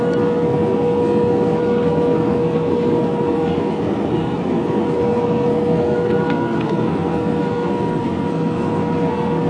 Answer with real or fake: fake